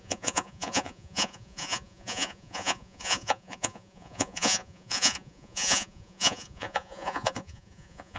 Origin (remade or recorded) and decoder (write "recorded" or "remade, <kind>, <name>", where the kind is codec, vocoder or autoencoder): remade, vocoder, Vocos